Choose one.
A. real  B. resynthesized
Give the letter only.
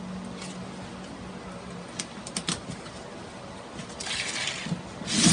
A